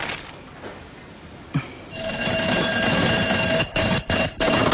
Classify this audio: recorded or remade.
recorded